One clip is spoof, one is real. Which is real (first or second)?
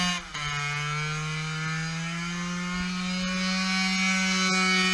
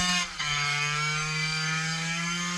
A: first